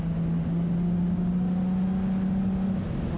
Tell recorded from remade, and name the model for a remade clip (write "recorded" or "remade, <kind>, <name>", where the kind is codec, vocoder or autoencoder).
recorded